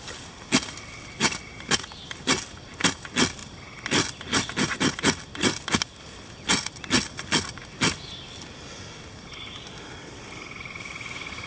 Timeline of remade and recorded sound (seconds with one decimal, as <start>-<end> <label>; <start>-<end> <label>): 0.0-11.5 recorded